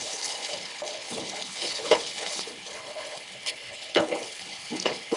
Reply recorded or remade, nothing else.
remade